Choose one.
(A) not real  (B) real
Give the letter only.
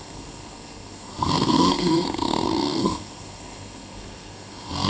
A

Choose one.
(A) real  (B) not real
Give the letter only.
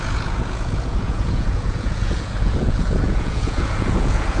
B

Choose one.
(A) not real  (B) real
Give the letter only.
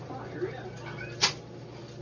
B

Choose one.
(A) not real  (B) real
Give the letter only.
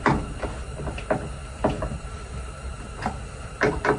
B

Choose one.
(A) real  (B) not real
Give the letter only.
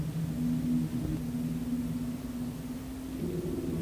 A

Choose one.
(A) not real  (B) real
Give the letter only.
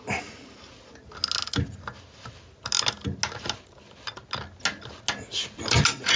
B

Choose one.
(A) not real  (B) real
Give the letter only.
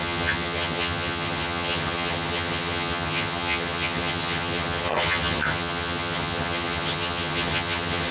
A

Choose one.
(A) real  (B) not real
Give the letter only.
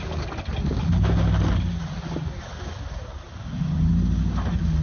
A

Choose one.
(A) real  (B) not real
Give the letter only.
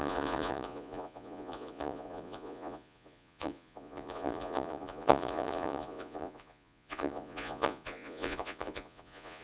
B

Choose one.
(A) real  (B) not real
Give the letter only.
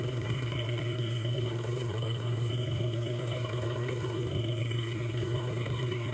B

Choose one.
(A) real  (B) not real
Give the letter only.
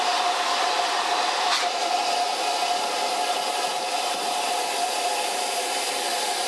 A